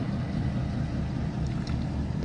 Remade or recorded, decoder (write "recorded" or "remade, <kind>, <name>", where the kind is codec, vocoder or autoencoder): recorded